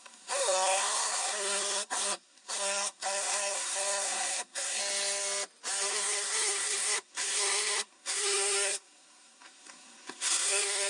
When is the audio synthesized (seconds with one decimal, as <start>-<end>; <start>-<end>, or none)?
0.0-4.8; 5.9-10.9